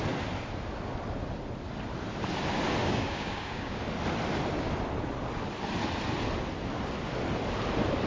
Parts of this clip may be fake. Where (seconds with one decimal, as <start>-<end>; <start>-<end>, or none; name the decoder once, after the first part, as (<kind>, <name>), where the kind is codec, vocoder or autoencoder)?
2.8-3.8 (codec, DAC)